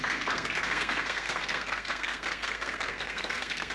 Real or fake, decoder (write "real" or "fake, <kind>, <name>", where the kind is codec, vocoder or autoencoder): fake, codec, SNAC